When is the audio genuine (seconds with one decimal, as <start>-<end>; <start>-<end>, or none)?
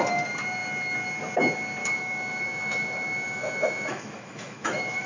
0.0-1.8